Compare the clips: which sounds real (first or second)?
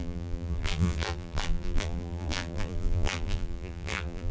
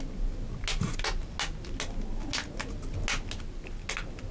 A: second